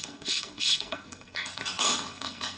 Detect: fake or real fake